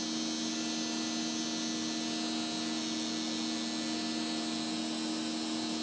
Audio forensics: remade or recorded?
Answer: recorded